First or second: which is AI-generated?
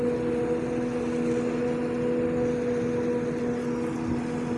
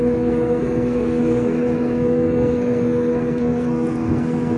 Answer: second